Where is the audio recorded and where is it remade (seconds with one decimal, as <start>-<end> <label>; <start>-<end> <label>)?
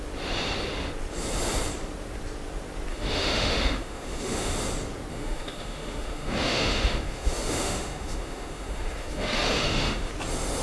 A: 0.0-2.9 recorded; 2.9-4.5 remade; 4.5-5.1 recorded; 5.1-10.1 remade; 10.1-10.6 recorded